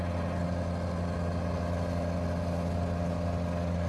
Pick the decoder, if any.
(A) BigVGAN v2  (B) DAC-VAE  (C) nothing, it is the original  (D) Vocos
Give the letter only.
C